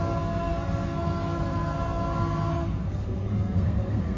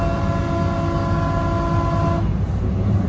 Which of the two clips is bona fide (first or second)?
second